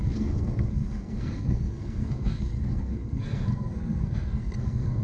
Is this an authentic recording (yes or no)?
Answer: no